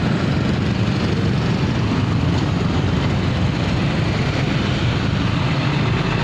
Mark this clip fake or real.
real